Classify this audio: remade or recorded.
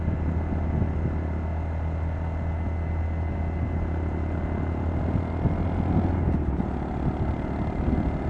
recorded